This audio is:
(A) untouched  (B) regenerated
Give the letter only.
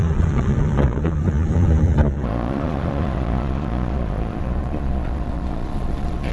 B